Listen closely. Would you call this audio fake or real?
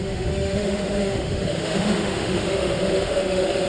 fake